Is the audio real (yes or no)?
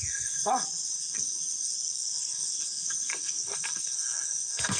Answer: no